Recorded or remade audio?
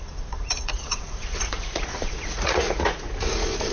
remade